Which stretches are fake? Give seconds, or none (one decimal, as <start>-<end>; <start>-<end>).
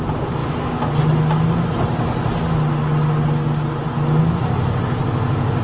none